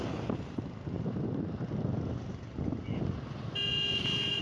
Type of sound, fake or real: real